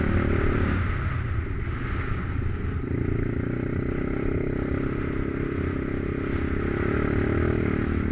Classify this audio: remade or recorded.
recorded